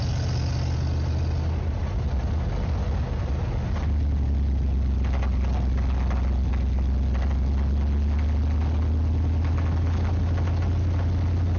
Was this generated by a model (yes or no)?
no